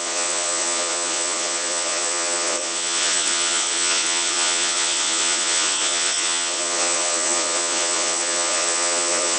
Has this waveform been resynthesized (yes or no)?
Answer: yes